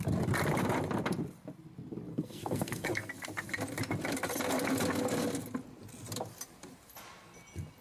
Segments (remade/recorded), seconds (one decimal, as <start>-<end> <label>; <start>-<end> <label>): 0.0-2.1 recorded; 2.1-3.1 remade; 3.1-7.8 recorded